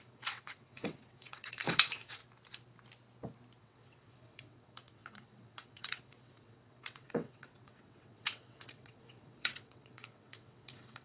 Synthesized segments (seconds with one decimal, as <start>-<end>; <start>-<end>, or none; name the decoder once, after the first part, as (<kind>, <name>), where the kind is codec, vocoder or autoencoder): 0.0-2.2 (vocoder, WaveNeXt); 3.6-11.0